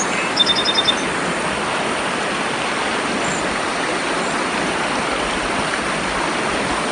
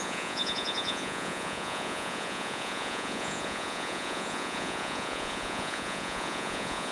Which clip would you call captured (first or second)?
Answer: first